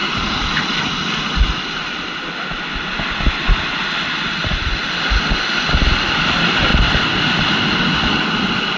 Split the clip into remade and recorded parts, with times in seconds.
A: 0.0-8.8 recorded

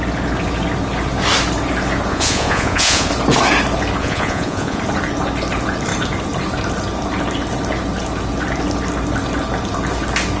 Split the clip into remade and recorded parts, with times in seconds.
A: 0.0-2.1 recorded; 2.1-3.1 remade; 3.1-4.0 recorded; 4.0-4.8 remade; 4.8-10.4 recorded